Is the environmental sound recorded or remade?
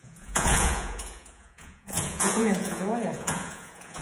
remade